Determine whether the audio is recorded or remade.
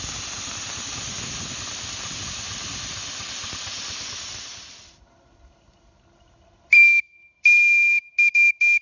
recorded